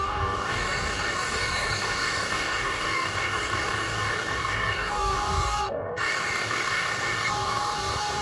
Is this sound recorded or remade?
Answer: remade